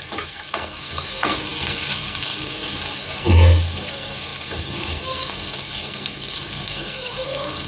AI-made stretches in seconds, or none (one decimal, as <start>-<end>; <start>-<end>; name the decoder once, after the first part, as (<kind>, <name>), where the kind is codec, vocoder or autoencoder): 0.0-7.7 (codec, SNAC)